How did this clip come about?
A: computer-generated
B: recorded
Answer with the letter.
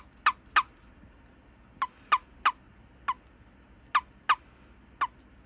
B